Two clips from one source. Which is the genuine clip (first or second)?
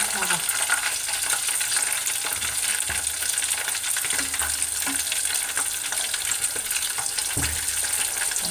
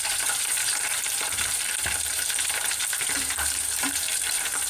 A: first